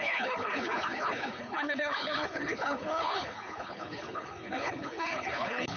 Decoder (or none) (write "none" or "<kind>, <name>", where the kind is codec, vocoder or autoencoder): codec, HILCodec